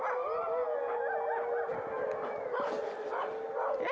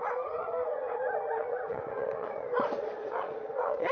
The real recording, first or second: first